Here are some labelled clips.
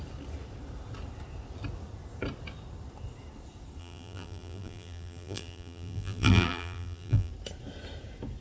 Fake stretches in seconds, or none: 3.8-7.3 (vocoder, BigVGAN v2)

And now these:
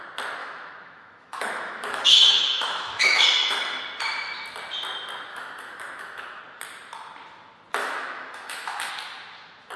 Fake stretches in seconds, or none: 0.4-3.8 (autoencoder, DAC-VAE); 5.3-6.4; 7.8-8.9

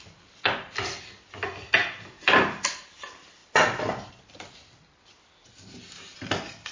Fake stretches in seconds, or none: none